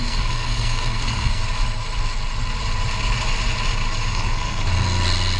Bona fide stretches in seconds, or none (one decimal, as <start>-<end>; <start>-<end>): 1.4-4.1; 4.7-5.4